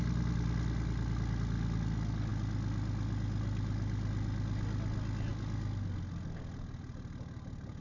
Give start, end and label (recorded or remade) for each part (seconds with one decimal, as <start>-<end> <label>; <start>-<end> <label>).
0.0-7.8 recorded